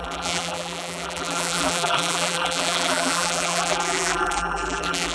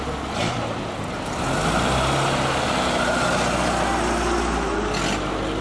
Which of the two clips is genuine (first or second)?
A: second